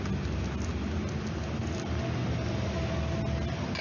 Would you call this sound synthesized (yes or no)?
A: no